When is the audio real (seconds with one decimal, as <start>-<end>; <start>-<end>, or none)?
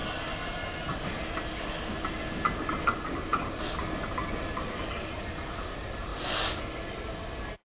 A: 0.0-6.1; 6.6-7.8